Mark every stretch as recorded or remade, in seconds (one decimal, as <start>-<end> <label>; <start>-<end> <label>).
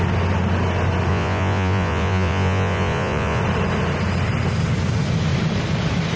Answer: 0.0-1.1 recorded; 1.1-3.4 remade; 3.4-6.2 recorded